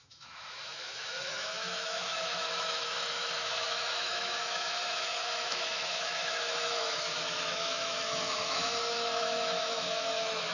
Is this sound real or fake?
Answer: fake